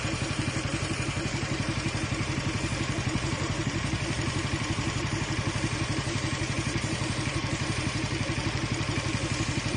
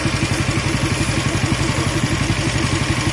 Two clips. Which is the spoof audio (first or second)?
first